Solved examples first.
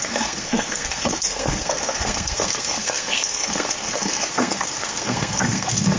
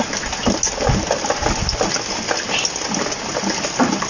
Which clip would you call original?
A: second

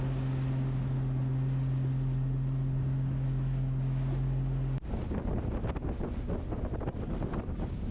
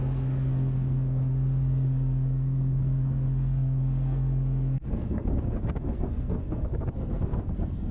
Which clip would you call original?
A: first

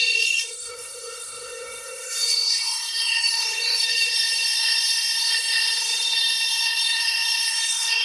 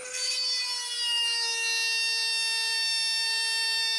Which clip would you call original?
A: second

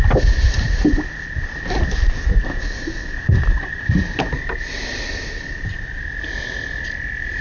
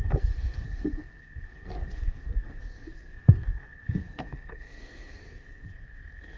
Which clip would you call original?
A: first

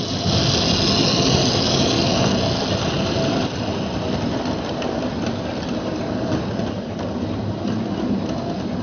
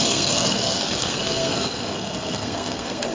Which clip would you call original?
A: first